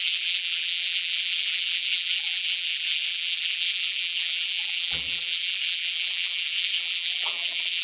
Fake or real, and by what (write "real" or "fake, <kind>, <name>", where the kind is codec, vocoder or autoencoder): fake, vocoder, BigVGAN v2